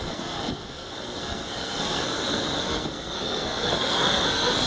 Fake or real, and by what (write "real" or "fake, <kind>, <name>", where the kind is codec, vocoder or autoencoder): fake, codec, SNAC